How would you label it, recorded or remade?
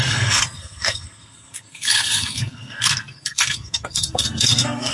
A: remade